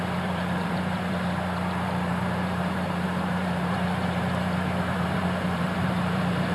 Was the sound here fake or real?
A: fake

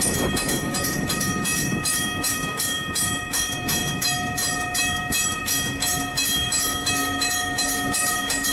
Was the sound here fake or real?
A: fake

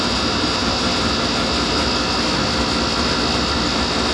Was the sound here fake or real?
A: real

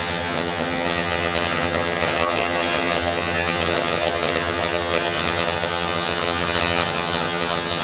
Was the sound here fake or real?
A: fake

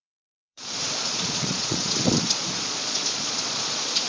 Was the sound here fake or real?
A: fake